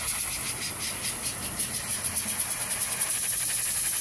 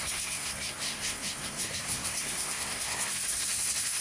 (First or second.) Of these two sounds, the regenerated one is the second